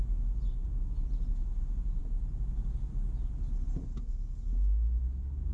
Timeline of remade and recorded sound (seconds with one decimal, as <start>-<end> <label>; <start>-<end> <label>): 0.0-5.5 recorded